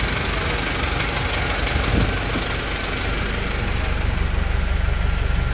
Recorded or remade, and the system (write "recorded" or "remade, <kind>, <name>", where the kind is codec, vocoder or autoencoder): recorded